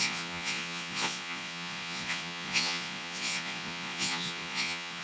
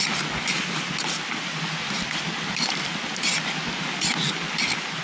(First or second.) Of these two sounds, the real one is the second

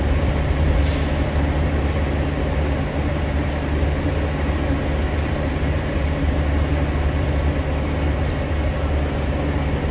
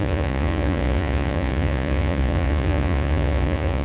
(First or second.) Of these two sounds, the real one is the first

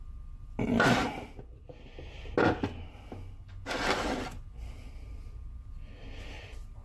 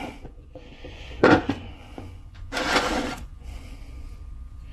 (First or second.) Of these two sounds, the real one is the first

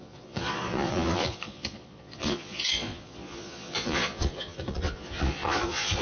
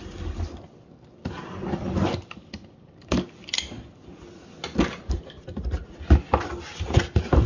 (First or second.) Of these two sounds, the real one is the second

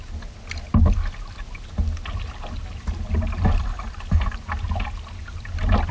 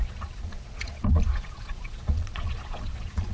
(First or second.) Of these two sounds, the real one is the first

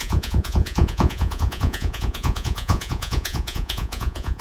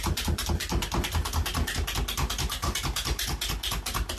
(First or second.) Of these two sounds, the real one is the second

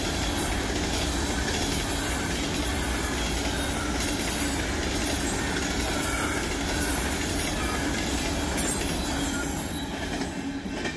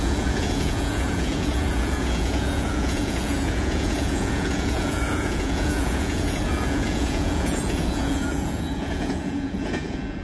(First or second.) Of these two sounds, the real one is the first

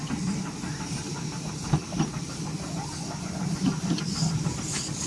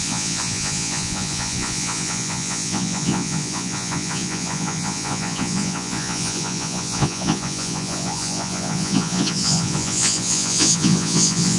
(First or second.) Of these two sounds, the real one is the first